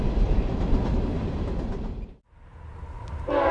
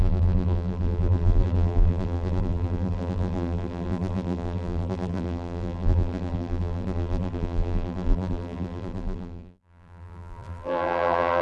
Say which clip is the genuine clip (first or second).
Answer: first